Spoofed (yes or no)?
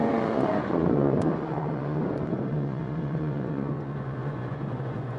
yes